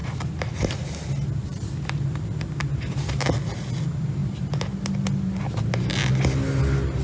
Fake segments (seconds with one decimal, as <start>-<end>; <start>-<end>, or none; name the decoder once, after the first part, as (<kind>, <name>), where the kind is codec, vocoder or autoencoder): 0.0-0.5 (vocoder, BigVGAN v2); 1.5-2.9; 4.2-4.9